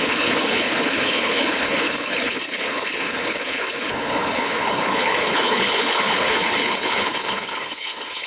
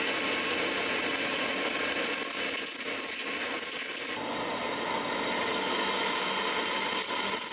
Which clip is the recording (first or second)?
second